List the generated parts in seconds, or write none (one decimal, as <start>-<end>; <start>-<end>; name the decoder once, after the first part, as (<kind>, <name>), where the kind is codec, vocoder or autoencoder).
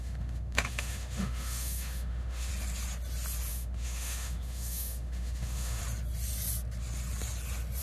0.0-2.5 (autoencoder, DAC-VAE); 3.5-5.8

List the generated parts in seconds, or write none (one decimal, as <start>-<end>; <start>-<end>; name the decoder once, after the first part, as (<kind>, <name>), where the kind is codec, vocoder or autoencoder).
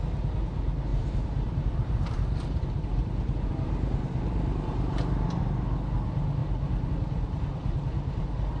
0.9-5.4 (vocoder, BigVGAN v2); 6.4-6.9; 7.6-8.2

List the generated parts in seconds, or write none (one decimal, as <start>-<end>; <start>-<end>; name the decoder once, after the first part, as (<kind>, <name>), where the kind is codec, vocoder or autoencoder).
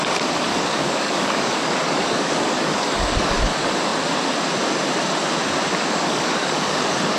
0.5-3.4 (codec, DAC); 5.8-7.2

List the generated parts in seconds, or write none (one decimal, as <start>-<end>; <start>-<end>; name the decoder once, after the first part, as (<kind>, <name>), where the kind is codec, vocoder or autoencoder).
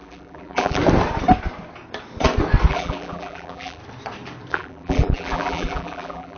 0.0-0.8 (vocoder, BigVGAN v2); 2.7-3.8; 4.5-6.4